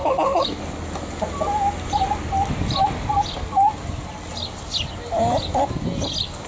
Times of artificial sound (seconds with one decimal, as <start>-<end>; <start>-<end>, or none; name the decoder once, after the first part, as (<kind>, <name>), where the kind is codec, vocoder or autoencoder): 0.0-0.6 (codec, HILCodec)

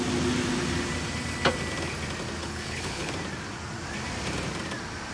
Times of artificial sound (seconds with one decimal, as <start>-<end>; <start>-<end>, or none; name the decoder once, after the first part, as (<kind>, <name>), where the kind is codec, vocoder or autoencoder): 2.4-3.1 (codec, HILCodec)